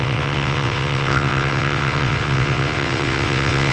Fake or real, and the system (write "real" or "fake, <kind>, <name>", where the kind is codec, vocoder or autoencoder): fake, vocoder, WaveNeXt